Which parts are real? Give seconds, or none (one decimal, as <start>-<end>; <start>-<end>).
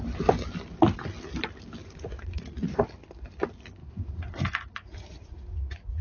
0.0-1.8; 2.8-3.8